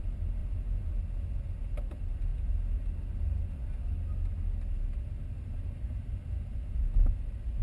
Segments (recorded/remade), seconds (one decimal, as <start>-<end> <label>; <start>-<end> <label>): 0.0-0.4 recorded; 0.4-1.0 remade; 1.0-7.6 recorded